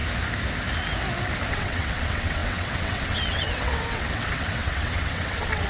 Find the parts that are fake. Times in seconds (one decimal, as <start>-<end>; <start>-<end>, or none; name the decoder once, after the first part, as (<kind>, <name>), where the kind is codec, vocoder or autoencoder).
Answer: 1.5-5.7 (vocoder, WaveNeXt)